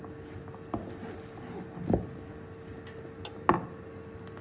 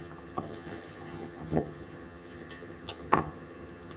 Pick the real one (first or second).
first